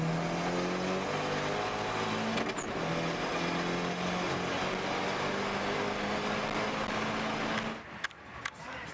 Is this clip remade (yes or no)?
no